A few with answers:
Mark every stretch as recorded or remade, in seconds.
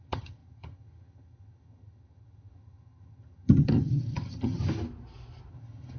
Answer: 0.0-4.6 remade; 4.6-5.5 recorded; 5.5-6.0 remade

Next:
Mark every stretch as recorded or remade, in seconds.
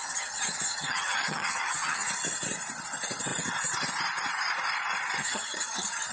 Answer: 0.0-2.1 remade; 2.1-5.2 recorded; 5.2-6.1 remade